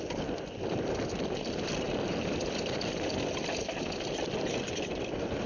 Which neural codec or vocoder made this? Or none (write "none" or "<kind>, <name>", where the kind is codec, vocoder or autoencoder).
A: none